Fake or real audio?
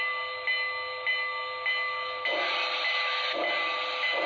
real